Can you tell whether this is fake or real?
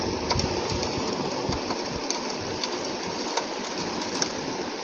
real